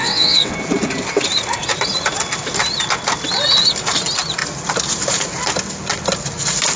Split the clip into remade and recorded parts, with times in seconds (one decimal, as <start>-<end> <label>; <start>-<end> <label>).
0.0-0.5 remade; 0.5-6.8 recorded